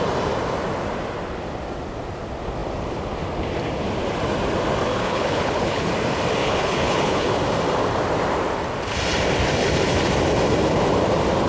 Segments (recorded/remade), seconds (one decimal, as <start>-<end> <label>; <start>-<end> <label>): 0.0-4.9 recorded; 4.9-5.9 remade; 5.9-6.4 recorded; 6.4-7.3 remade; 7.3-11.5 recorded